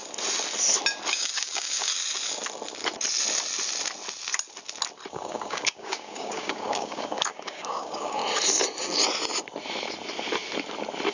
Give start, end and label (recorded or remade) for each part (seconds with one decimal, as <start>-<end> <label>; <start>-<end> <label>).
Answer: 0.0-1.1 recorded; 1.1-1.9 remade; 1.9-5.1 recorded; 5.1-8.2 remade; 8.2-11.1 recorded